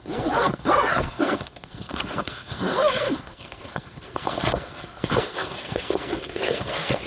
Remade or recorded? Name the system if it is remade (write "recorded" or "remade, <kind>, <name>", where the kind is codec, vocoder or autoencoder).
remade, codec, SNAC